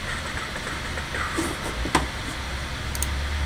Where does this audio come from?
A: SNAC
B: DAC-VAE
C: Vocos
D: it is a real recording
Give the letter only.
D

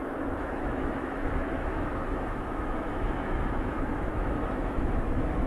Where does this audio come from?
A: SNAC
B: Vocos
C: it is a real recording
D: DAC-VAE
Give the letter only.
D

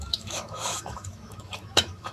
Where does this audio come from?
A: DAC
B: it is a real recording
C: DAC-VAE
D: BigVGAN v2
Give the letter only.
C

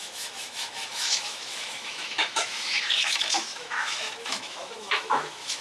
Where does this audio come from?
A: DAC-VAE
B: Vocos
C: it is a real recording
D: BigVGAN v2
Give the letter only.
A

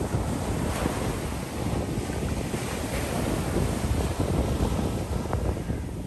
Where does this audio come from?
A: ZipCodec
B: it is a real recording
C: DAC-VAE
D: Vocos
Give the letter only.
B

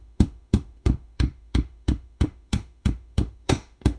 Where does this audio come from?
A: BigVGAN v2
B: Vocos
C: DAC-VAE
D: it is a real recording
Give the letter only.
C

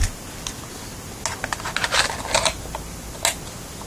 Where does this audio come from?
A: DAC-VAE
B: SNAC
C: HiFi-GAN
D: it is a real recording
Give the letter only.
D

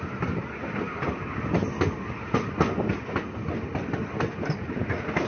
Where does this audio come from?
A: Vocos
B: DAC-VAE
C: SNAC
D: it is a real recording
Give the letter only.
D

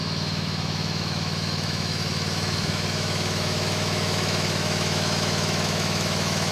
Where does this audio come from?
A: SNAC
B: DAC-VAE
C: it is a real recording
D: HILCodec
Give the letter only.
B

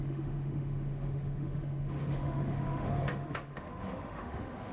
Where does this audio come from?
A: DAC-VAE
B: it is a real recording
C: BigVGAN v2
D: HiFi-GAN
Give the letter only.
A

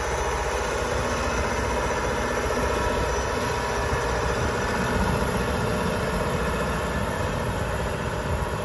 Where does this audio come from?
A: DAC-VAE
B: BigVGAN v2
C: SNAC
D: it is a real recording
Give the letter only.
D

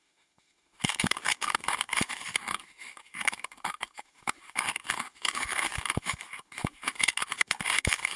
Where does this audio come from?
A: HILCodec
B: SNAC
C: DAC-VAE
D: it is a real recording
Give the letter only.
C